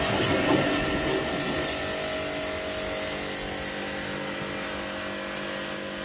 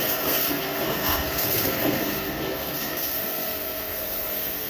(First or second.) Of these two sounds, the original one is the first